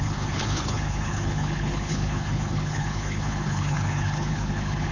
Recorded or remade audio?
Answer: remade